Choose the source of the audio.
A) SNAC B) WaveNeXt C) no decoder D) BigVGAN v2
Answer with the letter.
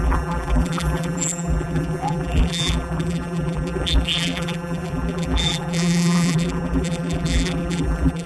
D